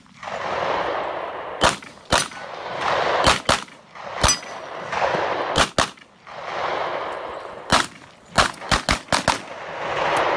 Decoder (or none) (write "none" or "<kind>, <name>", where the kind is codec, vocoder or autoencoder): none